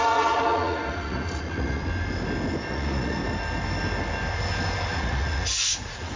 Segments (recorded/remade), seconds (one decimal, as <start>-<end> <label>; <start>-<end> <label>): 0.0-1.9 remade; 1.9-2.7 recorded; 2.7-3.2 remade; 3.2-4.9 recorded; 4.9-6.2 remade

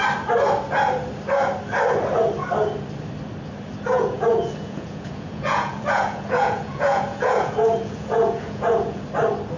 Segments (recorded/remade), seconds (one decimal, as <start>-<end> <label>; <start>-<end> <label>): 0.0-3.9 recorded; 3.9-9.0 remade; 9.0-9.6 recorded

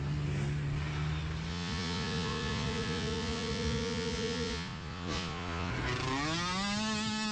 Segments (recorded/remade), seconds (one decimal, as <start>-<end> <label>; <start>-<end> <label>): 0.0-1.5 recorded; 1.5-5.7 remade; 5.7-7.3 recorded

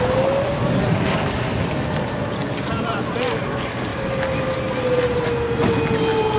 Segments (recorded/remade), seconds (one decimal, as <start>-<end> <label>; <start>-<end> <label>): 0.0-6.4 recorded

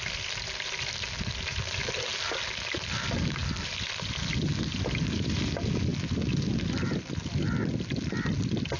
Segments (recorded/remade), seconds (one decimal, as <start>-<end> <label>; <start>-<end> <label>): 0.0-8.8 recorded